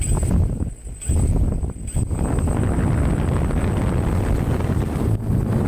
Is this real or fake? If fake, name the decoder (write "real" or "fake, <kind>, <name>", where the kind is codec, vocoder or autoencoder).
real